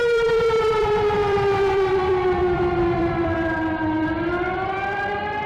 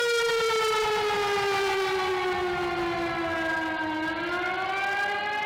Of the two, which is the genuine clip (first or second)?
second